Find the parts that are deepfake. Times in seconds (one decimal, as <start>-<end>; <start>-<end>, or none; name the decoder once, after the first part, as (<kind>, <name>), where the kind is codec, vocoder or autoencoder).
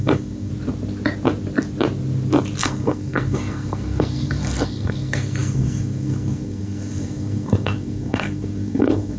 0.0-0.5 (codec, SNAC); 2.6-9.2